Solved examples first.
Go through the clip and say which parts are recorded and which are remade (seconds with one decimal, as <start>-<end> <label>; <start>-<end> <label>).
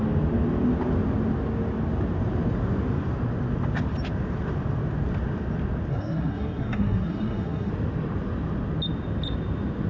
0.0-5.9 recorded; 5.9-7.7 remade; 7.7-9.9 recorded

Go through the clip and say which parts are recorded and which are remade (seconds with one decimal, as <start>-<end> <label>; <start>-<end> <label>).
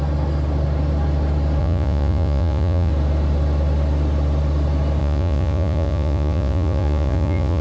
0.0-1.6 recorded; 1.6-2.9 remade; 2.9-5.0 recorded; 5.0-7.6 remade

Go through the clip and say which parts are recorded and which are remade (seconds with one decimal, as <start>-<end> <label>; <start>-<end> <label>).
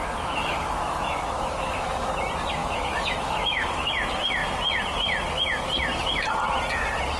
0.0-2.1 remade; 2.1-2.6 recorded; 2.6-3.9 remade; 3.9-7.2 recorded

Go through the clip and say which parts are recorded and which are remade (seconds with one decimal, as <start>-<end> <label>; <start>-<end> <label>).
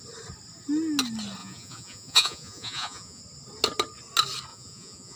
0.0-1.4 recorded; 1.4-3.2 remade; 3.2-4.5 recorded; 4.5-5.2 remade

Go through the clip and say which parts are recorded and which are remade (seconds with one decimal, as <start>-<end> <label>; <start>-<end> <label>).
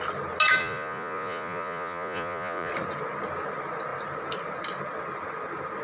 0.0-0.6 recorded; 0.6-2.7 remade; 2.7-5.8 recorded